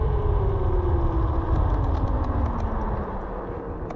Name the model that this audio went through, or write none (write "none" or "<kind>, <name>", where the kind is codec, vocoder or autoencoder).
none